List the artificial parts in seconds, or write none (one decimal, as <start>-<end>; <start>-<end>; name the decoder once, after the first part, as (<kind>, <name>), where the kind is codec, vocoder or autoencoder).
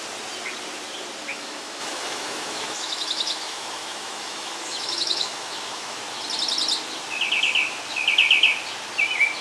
1.3-6.0 (autoencoder, DAC-VAE)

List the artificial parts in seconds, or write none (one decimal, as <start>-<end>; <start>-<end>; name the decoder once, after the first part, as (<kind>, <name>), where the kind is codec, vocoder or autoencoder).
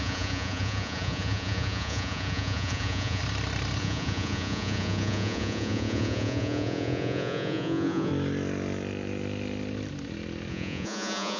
0.0-3.2 (vocoder, Vocos); 3.8-8.1; 10.5-11.4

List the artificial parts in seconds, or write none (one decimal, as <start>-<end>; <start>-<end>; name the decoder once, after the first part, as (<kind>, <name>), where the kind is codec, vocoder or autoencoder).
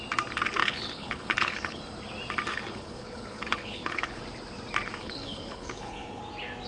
0.6-1.8 (codec, HILCodec); 2.5-4.2; 5.0-6.2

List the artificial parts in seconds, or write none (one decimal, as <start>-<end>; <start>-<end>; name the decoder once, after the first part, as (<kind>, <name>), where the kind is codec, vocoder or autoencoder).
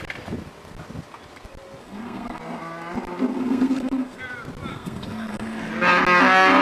1.8-2.4 (codec, SNAC); 3.3-4.2; 4.7-5.7